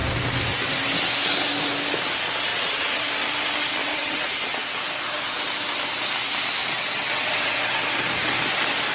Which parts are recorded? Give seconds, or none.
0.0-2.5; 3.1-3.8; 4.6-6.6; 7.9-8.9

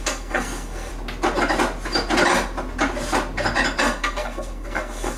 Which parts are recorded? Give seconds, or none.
0.9-3.8

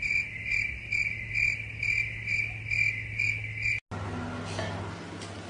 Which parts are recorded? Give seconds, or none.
0.0-5.5